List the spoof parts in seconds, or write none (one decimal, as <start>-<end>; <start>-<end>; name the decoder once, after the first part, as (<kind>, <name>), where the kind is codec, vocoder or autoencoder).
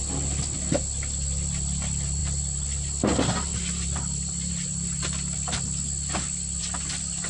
none